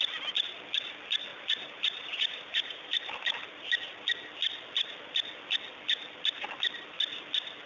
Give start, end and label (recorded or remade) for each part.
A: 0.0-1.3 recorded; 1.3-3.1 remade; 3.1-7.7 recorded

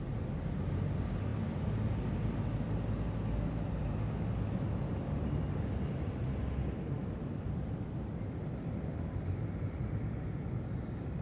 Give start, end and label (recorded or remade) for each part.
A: 0.0-1.3 remade; 1.3-3.8 recorded; 3.8-11.2 remade

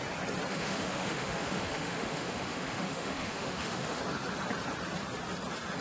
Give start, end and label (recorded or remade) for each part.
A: 0.0-0.5 recorded; 0.5-4.0 remade; 4.0-5.8 recorded

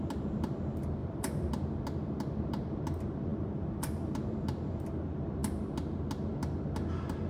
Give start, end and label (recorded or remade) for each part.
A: 0.0-1.0 recorded; 1.0-1.5 remade; 1.5-3.3 recorded; 3.3-4.0 remade; 4.0-7.3 recorded

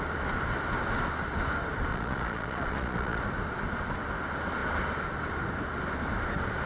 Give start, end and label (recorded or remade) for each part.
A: 0.0-1.9 recorded; 1.9-3.2 remade; 3.2-6.7 recorded

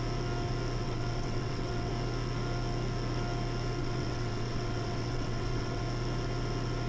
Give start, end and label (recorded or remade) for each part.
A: 0.0-0.8 recorded; 0.8-1.9 remade; 1.9-3.8 recorded; 3.8-5.8 remade; 5.8-6.9 recorded